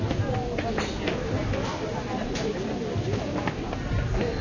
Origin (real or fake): real